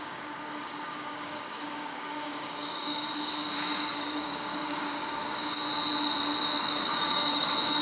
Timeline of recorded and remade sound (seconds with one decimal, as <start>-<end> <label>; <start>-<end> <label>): 0.0-5.7 remade; 5.7-6.6 recorded; 6.6-7.8 remade